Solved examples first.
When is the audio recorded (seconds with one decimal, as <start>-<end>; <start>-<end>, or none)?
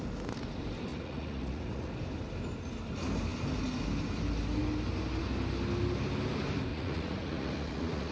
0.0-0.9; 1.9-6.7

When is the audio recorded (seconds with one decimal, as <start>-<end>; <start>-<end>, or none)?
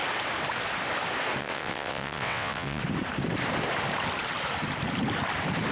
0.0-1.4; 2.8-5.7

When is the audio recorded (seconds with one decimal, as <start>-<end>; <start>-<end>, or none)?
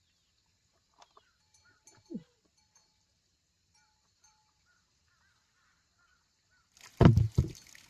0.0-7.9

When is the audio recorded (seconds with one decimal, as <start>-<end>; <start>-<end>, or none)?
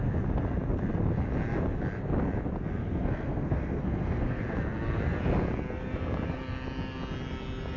0.0-2.8; 4.4-7.8